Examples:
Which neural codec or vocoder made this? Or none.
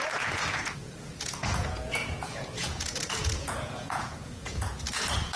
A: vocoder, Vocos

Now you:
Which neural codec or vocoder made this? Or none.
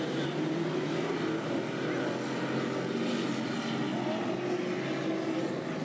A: none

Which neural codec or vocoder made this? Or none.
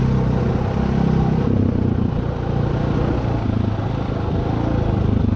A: none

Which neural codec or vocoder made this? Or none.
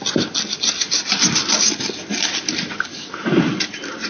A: none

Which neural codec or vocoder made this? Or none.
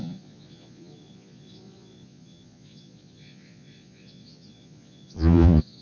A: vocoder, Vocos